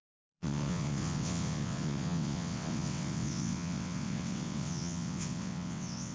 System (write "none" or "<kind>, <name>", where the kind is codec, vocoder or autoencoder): vocoder, WaveNeXt